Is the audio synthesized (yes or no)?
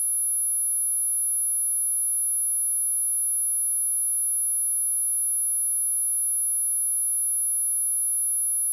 no